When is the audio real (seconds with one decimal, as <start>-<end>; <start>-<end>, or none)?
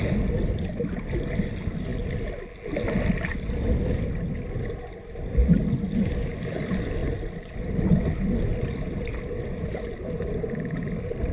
1.9-6.2